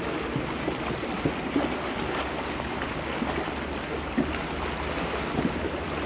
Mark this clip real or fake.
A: real